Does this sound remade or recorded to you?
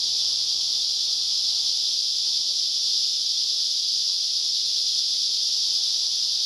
recorded